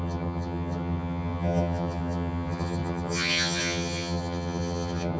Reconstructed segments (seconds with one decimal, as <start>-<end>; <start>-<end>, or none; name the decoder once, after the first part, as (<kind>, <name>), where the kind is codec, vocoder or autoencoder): 0.0-5.2 (vocoder, HiFi-GAN)

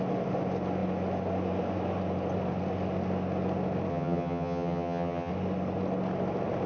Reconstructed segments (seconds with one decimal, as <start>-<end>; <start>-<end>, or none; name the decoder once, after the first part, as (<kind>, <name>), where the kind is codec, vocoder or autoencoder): 3.9-5.3 (vocoder, HiFi-GAN)

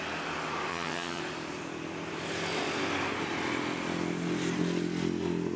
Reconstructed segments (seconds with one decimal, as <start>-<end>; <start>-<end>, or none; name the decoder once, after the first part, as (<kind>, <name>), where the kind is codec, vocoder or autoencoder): 0.7-1.2 (vocoder, HiFi-GAN)

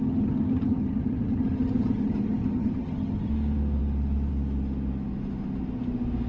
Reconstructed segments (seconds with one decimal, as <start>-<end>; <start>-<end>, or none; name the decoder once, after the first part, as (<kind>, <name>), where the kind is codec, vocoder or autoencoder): 0.0-3.3 (vocoder, HiFi-GAN)

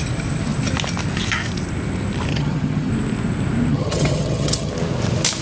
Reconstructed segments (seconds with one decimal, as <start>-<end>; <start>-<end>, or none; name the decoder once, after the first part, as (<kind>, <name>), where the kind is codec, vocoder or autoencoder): 2.3-2.9 (vocoder, HiFi-GAN); 3.7-4.7

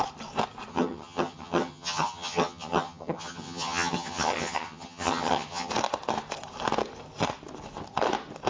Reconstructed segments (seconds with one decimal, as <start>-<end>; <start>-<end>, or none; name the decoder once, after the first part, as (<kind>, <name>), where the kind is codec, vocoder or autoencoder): 0.7-5.7 (vocoder, HiFi-GAN)